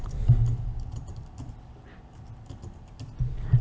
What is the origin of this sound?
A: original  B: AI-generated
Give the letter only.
A